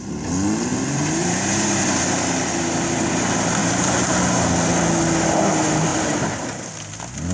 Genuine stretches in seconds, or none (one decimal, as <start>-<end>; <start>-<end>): 0.0-0.7; 2.0-3.6; 4.2-5.9; 6.6-7.3